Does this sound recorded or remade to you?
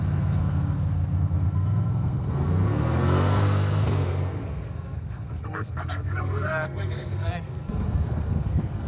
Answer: remade